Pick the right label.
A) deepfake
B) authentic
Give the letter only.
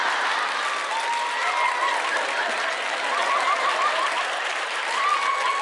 B